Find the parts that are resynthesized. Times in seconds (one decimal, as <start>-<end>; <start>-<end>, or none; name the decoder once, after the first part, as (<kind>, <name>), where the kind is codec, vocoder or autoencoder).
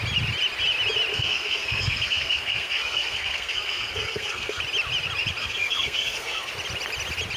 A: 1.1-4.6 (codec, SNAC); 5.4-6.5